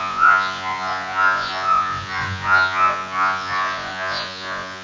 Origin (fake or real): fake